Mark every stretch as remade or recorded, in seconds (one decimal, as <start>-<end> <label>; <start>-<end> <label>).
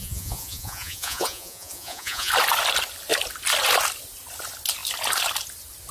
0.0-2.3 remade; 2.3-5.9 recorded